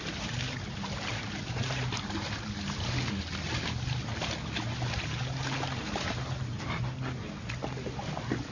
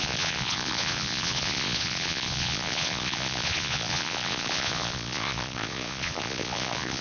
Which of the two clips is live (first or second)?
first